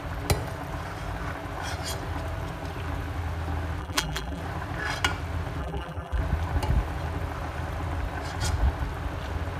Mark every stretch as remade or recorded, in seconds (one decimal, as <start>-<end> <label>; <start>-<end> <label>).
0.0-3.8 recorded; 3.8-4.4 remade; 4.4-5.6 recorded; 5.6-6.2 remade; 6.2-9.6 recorded

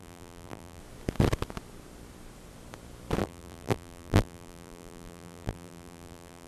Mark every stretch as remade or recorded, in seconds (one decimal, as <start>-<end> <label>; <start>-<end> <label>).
0.0-0.8 remade; 0.8-3.2 recorded; 3.2-6.5 remade

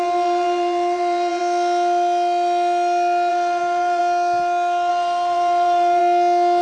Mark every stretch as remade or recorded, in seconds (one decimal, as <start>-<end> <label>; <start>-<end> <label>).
0.0-1.4 remade; 1.4-3.3 recorded; 3.3-4.0 remade; 4.0-4.9 recorded; 4.9-6.0 remade; 6.0-6.6 recorded